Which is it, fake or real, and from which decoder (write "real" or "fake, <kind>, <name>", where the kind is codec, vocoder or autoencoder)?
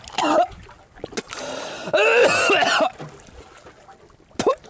real